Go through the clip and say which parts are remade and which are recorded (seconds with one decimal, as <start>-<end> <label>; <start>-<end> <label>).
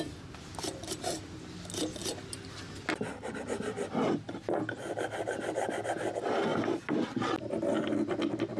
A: 0.0-8.6 recorded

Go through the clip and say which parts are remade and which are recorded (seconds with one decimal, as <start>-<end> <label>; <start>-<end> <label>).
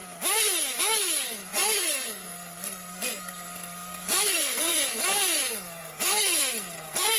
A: 0.0-0.8 recorded; 0.8-7.2 remade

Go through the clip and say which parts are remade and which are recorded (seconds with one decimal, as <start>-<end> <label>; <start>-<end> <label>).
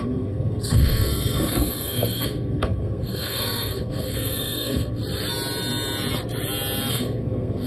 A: 0.0-5.0 remade; 5.0-6.9 recorded; 6.9-7.7 remade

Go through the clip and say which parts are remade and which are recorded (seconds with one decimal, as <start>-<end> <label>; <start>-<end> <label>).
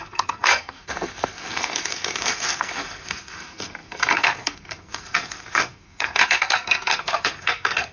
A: 0.0-7.9 remade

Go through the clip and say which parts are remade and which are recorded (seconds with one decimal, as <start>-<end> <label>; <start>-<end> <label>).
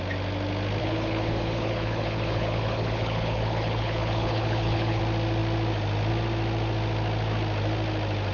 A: 0.0-0.8 recorded; 0.8-5.0 remade; 5.0-8.3 recorded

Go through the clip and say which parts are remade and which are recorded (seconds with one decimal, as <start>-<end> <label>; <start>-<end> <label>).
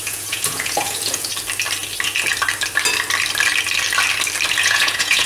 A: 0.0-1.3 remade; 1.3-4.5 recorded; 4.5-5.3 remade